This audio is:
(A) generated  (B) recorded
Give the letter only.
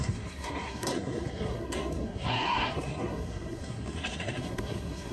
A